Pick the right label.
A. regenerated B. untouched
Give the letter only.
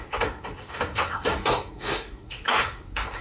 A